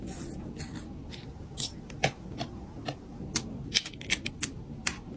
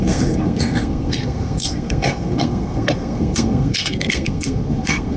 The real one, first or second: first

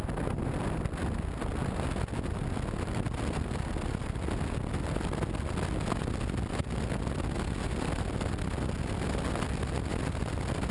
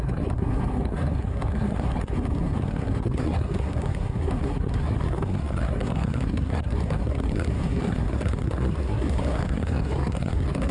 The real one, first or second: first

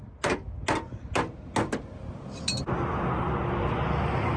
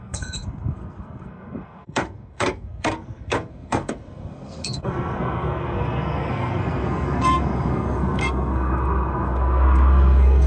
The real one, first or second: first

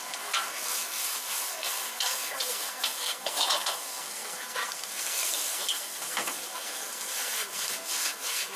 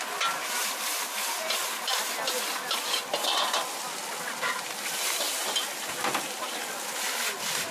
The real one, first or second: second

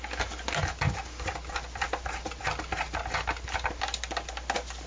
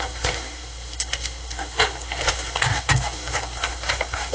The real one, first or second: first